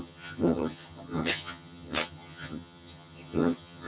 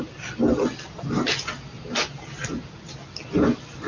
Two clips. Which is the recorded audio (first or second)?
second